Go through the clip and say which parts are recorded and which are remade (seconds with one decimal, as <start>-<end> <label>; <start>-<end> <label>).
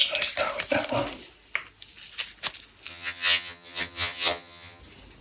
0.0-2.9 recorded; 2.9-4.8 remade; 4.8-5.2 recorded